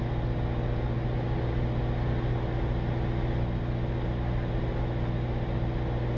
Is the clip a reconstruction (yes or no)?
no